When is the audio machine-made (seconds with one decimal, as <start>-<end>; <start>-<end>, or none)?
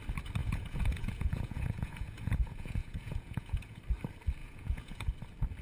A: 0.4-3.8; 4.4-5.1